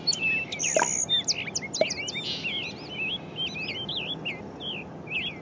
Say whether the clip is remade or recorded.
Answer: recorded